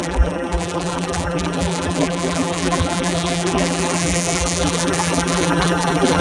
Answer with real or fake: fake